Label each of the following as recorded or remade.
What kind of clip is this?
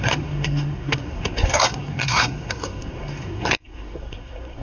remade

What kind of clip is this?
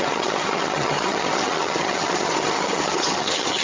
remade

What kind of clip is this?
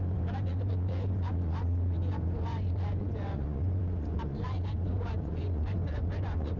remade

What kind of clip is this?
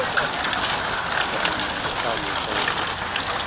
recorded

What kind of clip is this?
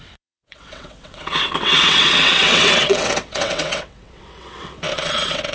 remade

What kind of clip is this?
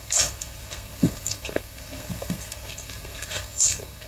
remade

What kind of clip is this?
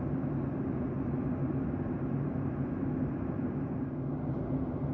recorded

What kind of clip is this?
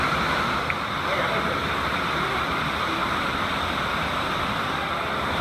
remade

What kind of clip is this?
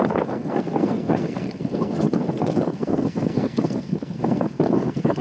remade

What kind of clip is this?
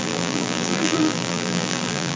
remade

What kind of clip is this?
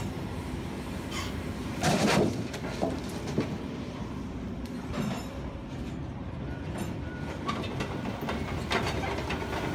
remade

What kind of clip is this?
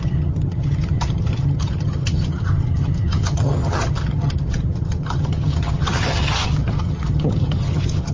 remade